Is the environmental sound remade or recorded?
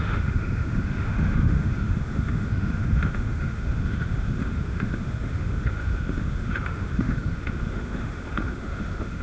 remade